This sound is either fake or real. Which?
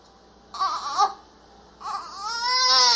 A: real